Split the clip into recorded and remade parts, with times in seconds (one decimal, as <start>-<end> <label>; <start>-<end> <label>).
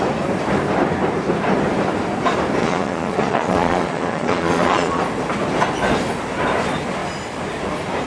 0.0-2.6 recorded; 2.6-5.0 remade; 5.0-8.1 recorded